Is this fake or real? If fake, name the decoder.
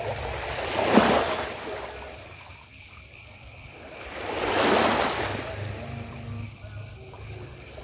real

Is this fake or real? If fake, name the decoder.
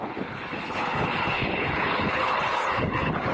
fake, codec, HILCodec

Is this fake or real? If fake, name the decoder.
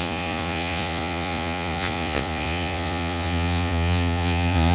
fake, vocoder, Vocos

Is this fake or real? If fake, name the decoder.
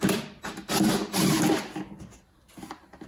real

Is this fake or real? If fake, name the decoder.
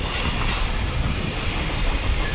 real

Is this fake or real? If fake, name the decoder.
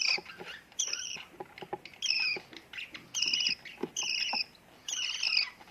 real